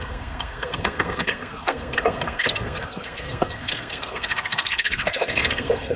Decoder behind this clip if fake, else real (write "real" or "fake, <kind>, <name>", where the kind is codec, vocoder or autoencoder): fake, codec, SNAC